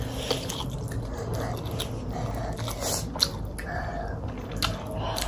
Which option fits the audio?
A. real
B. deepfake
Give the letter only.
A